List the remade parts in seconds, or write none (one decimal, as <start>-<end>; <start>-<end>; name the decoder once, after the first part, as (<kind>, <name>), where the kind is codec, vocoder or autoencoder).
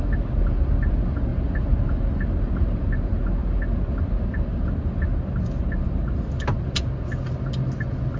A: none